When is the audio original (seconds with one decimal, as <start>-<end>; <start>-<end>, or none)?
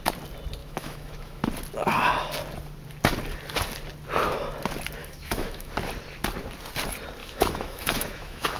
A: 0.0-0.6; 1.4-5.0; 5.7-7.2